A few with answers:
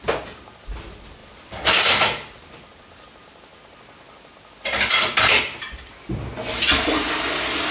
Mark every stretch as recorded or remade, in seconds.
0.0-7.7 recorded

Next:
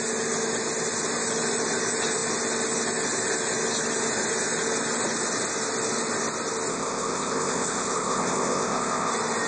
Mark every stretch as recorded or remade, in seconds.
0.0-6.7 recorded; 6.7-9.1 remade; 9.1-9.5 recorded

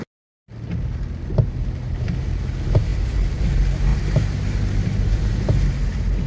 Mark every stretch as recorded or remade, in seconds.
0.0-6.3 recorded

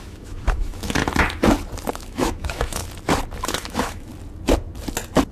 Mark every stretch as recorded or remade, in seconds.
0.0-1.0 remade; 1.0-1.9 recorded; 1.9-2.8 remade; 2.8-3.4 recorded; 3.4-4.1 remade; 4.1-5.3 recorded